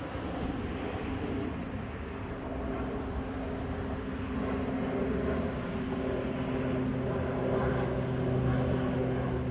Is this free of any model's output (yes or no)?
yes